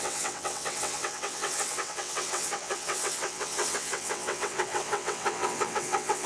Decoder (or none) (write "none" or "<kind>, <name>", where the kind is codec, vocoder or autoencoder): vocoder, WaveNeXt